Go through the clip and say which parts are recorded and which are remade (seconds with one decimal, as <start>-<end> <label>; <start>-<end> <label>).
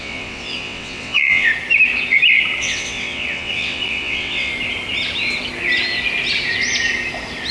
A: 0.0-1.5 remade; 1.5-2.6 recorded; 2.6-4.5 remade; 4.5-7.5 recorded